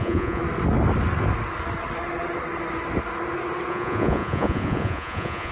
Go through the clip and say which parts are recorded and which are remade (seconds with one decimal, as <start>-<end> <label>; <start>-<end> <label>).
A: 0.0-0.4 remade; 0.4-3.7 recorded; 3.7-5.5 remade